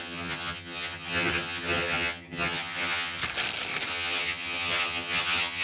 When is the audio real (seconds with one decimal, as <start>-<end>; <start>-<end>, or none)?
3.2-3.9